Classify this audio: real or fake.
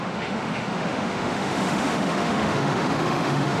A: fake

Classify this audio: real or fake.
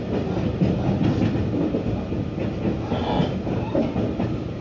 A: real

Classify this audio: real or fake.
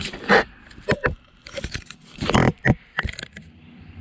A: fake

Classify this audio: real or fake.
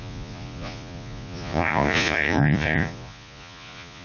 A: fake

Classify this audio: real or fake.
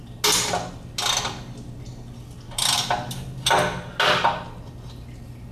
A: real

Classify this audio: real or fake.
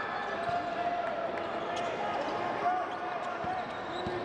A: real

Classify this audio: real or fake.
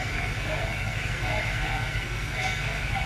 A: fake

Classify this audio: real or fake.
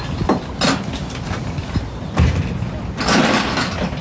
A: real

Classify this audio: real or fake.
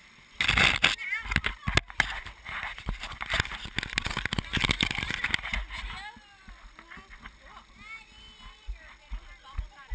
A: real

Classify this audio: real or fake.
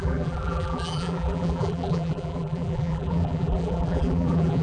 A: fake